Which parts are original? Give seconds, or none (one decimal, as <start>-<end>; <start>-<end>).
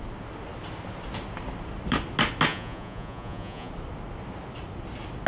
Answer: 0.0-2.5; 3.7-5.3